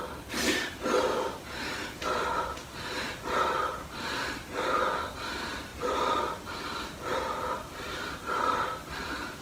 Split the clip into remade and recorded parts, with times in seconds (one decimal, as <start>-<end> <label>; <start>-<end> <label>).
0.0-5.7 recorded; 5.7-8.1 remade; 8.1-9.4 recorded